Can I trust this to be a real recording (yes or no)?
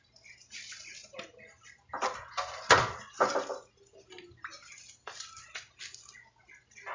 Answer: yes